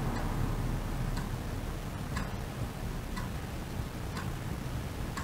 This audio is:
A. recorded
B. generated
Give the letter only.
A